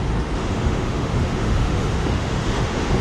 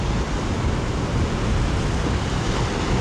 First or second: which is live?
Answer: second